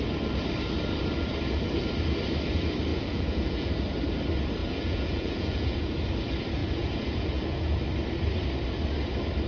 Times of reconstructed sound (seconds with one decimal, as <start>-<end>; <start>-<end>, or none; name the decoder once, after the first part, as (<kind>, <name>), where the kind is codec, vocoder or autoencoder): 2.9-3.7 (vocoder, Vocos); 4.6-5.9; 6.6-7.8